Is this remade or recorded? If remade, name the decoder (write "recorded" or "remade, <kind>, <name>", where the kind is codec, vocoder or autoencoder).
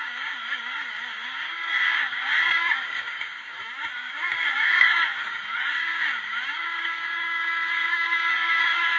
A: remade, codec, DAC